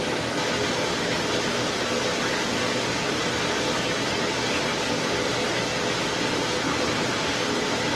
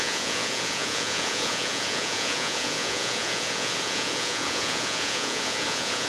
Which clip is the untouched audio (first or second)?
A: first